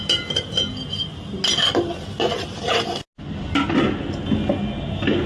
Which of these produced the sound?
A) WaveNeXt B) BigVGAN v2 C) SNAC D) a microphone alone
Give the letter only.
D